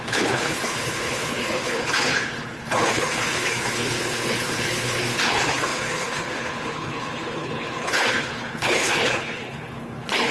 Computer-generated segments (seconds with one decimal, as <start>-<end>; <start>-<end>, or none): 0.0-10.3